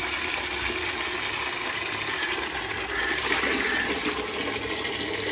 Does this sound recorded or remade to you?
recorded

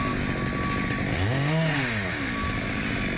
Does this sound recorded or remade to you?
recorded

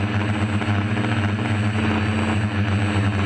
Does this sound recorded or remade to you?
recorded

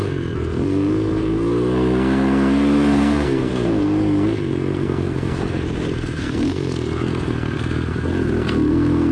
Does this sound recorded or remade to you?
remade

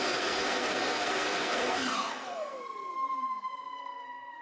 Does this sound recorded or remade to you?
remade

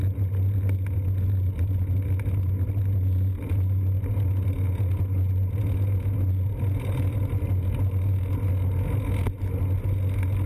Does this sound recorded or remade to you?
recorded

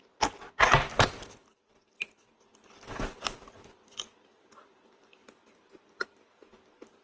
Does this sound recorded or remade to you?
recorded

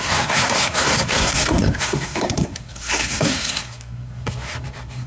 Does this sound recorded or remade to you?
remade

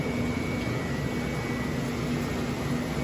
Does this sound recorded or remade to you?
recorded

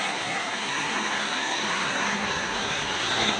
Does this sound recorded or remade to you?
remade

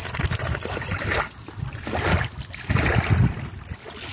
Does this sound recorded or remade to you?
recorded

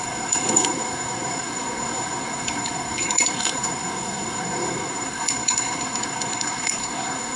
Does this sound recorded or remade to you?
remade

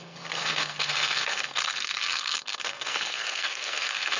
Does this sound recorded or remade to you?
remade